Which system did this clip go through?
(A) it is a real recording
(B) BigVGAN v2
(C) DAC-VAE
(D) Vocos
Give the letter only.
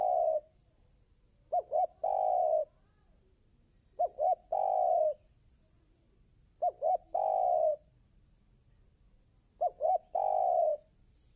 A